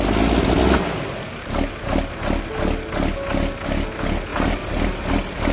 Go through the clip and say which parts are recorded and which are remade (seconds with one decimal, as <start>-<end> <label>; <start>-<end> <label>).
0.0-4.3 recorded; 4.3-5.1 remade; 5.1-5.5 recorded